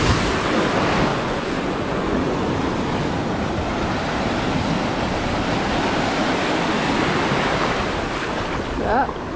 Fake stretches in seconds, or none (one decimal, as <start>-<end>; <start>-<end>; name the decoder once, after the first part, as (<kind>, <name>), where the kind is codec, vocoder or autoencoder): 1.1-2.5 (vocoder, Vocos)